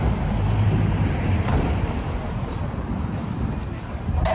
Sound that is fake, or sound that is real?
fake